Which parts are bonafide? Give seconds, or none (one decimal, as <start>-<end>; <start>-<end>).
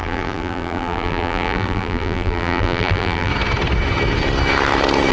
3.3-5.1